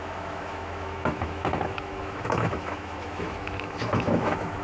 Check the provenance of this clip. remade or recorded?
remade